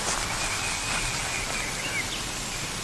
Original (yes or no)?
yes